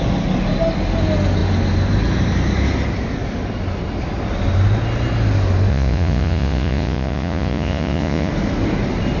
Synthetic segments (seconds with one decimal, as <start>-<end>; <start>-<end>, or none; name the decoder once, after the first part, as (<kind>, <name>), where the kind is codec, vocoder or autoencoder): 5.7-8.3 (vocoder, Vocos)